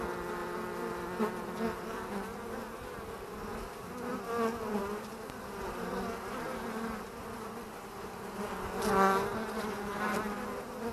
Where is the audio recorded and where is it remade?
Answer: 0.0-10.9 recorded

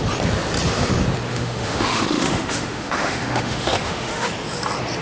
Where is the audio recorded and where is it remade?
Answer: 0.0-1.3 recorded; 1.3-4.3 remade; 4.3-5.0 recorded

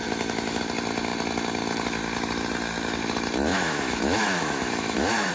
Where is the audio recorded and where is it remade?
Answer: 0.0-0.6 remade; 0.6-3.5 recorded; 3.5-5.3 remade